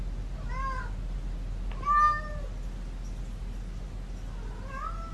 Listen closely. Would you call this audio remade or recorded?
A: recorded